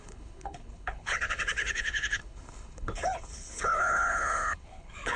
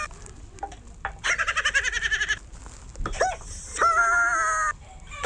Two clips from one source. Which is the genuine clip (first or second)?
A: second